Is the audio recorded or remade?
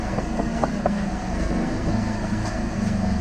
remade